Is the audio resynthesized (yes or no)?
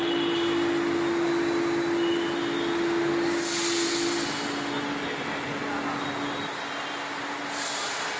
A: no